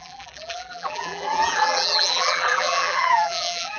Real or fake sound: fake